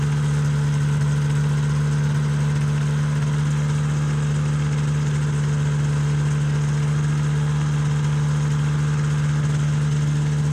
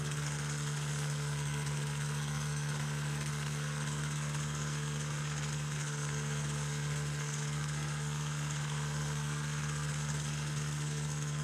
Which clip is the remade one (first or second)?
second